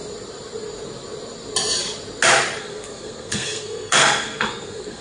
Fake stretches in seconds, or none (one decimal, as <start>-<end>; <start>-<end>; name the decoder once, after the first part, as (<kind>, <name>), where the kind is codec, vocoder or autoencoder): 2.6-5.0 (codec, SNAC)